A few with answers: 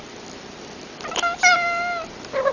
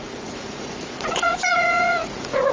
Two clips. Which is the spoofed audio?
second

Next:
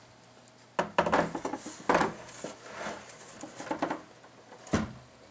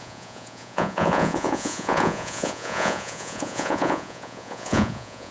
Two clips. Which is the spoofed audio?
second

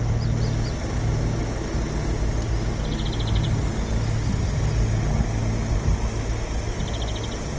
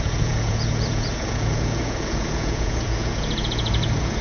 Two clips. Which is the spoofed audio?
second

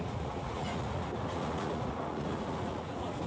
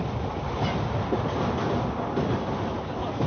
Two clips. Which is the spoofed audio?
first